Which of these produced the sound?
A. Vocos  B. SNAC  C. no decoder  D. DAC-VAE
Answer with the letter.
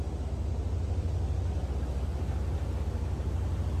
C